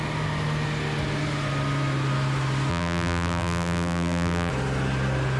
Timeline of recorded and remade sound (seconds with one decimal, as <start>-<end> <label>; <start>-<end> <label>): 0.0-2.7 recorded; 2.7-4.5 remade; 4.5-5.4 recorded